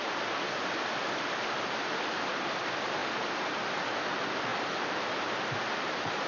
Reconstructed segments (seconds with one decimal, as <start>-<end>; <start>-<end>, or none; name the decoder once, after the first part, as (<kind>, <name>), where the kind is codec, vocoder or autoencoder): 0.0-6.3 (vocoder, BigVGAN v2)